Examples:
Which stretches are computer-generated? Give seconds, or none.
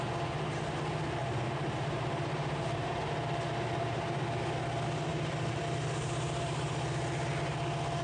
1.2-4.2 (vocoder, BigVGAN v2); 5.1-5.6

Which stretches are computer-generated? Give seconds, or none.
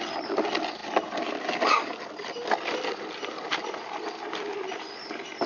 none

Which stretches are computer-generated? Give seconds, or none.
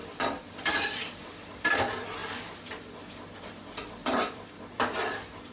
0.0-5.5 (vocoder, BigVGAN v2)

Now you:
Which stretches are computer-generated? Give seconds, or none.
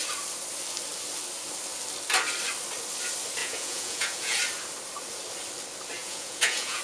3.4-4.4 (vocoder, Vocos); 6.0-6.8